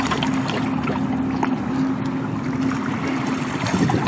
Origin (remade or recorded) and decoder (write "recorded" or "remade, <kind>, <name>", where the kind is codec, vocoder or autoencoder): recorded